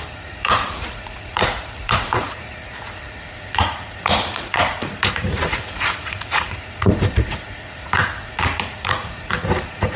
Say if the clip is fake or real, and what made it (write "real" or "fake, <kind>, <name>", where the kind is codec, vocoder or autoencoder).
fake, vocoder, Vocos